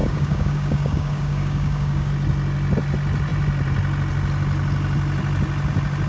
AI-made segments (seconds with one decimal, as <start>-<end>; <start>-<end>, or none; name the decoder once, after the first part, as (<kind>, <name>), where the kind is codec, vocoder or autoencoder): 0.0-2.1 (codec, DAC)